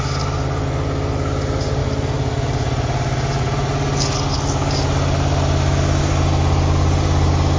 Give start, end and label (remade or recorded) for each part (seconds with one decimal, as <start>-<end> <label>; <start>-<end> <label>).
0.0-7.6 recorded